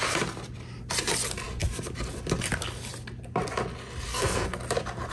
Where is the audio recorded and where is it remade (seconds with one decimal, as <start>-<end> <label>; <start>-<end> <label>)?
0.0-4.1 recorded; 4.1-4.6 remade; 4.6-5.1 recorded